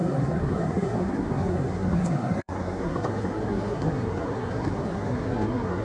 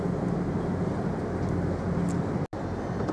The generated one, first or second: first